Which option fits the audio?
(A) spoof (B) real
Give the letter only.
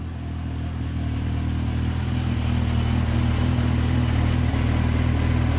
B